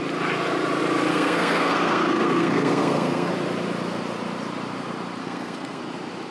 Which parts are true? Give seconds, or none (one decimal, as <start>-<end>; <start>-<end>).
0.0-1.1; 3.3-5.2; 5.8-6.3